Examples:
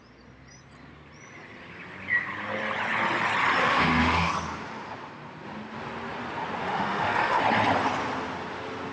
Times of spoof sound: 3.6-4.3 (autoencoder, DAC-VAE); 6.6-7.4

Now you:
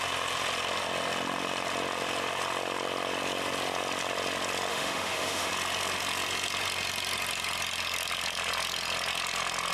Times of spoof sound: 4.7-5.5 (autoencoder, DAC-VAE)

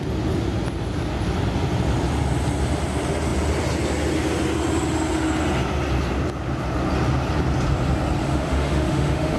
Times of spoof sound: 8.2-9.4 (autoencoder, DAC-VAE)

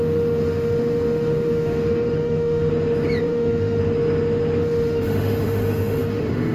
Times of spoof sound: 0.0-2.7 (autoencoder, DAC-VAE); 3.2-3.8; 4.6-6.5

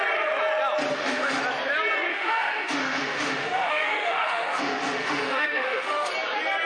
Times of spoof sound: 0.9-1.4 (autoencoder, DAC-VAE); 2.1-6.1